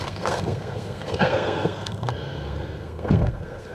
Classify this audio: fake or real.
fake